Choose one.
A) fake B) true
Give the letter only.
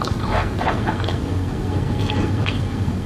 A